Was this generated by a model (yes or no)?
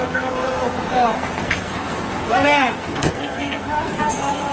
yes